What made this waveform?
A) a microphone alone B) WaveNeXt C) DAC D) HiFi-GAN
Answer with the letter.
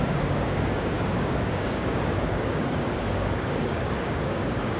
C